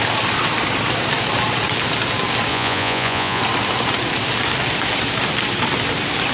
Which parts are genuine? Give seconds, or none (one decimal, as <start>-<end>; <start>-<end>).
0.0-2.5; 3.4-6.3